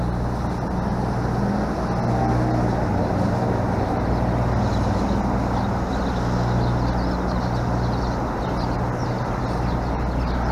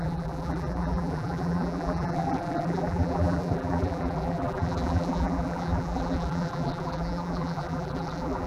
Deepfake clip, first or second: second